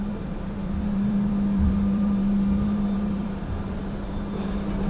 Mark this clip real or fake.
fake